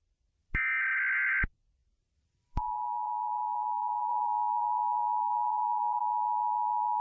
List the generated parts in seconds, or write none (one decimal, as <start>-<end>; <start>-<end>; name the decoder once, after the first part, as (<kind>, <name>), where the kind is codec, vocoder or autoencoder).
1.8-6.0 (vocoder, BigVGAN v2)